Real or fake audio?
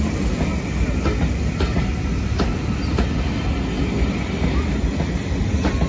real